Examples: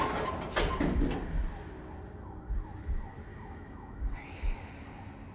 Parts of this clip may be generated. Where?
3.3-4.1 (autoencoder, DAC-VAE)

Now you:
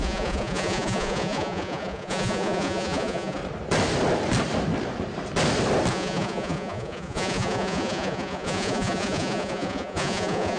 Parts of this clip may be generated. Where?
0.0-3.4 (vocoder, Vocos); 5.9-10.6

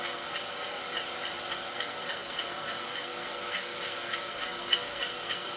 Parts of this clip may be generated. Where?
0.0-0.8 (codec, SNAC); 1.5-5.6